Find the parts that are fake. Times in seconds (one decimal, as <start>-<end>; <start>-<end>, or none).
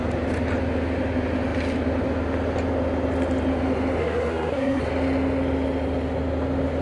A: 4.0-4.8